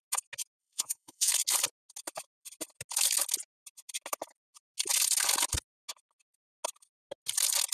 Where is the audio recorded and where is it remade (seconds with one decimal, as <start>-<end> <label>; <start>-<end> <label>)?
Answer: 0.0-0.6 recorded; 0.6-1.3 remade; 1.3-7.7 recorded

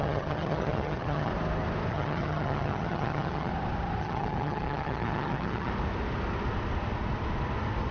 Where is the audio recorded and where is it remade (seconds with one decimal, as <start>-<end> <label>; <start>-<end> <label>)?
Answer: 0.0-1.3 remade; 1.3-1.9 recorded; 1.9-3.5 remade; 3.5-4.0 recorded; 4.0-5.7 remade; 5.7-7.9 recorded